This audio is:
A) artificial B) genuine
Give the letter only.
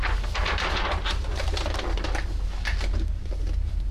B